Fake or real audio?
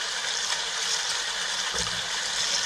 real